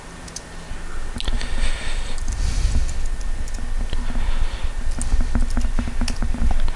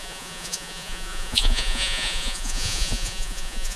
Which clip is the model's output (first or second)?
second